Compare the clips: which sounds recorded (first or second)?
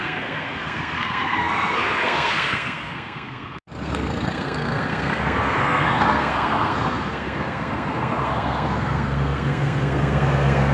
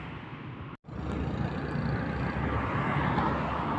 second